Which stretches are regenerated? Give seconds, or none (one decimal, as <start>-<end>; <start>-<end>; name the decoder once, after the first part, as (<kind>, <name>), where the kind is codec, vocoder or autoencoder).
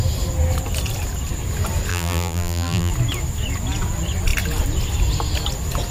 1.9-2.9 (vocoder, BigVGAN v2)